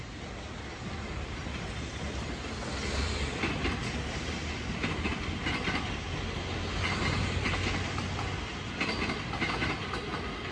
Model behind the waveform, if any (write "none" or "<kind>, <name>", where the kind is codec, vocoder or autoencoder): none